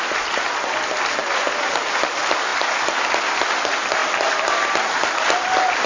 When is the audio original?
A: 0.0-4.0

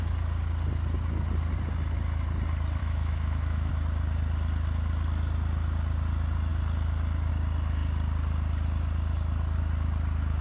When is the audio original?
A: 0.0-2.8; 3.7-10.4

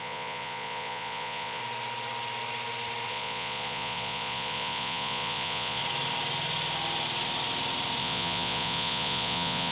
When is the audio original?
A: 1.6-3.1; 5.8-8.0

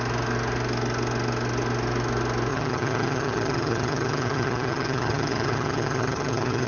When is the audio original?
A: 0.0-2.5

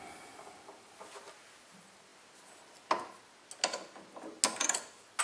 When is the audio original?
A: 0.0-5.2

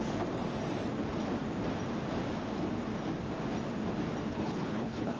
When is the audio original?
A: 0.0-4.3